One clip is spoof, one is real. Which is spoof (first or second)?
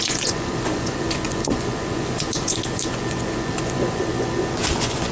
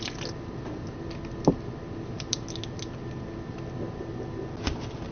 first